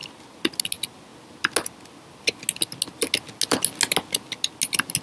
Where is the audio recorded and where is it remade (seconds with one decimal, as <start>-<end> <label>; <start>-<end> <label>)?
0.0-5.0 recorded